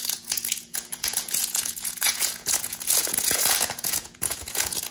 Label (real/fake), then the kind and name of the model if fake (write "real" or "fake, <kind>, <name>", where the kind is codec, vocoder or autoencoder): fake, vocoder, Vocos